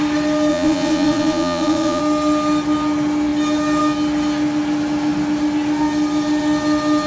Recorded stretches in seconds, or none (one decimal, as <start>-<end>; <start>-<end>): 0.0-0.5; 2.0-7.1